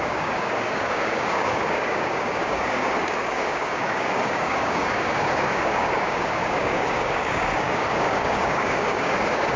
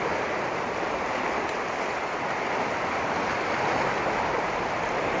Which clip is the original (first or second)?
second